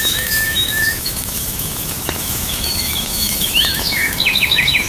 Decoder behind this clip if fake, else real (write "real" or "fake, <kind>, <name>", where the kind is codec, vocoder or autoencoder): fake, autoencoder, DAC-VAE